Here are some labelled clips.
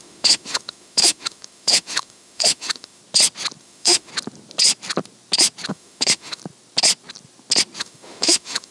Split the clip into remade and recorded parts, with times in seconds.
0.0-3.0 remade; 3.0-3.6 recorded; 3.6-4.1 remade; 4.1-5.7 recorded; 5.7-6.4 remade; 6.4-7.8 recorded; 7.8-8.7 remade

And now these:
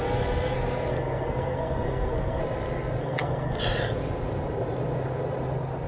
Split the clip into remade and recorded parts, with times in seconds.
0.0-0.9 recorded; 0.9-2.4 remade; 2.4-3.0 recorded; 3.0-3.6 remade; 3.6-5.9 recorded

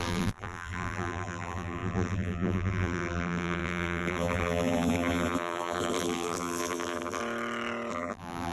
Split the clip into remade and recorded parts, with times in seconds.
0.0-7.2 remade; 7.2-7.9 recorded; 7.9-8.5 remade

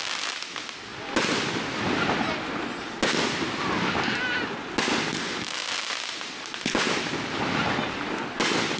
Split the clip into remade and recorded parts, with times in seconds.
0.0-8.8 recorded

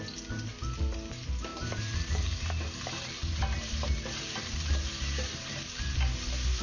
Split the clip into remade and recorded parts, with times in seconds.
0.0-1.5 recorded; 1.5-5.5 remade; 5.5-6.6 recorded

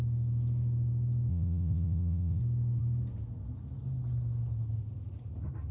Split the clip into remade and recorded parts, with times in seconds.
0.0-1.3 recorded; 1.3-2.4 remade; 2.4-5.7 recorded